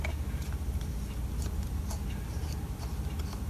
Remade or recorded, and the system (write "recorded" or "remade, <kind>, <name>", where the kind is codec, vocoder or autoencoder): recorded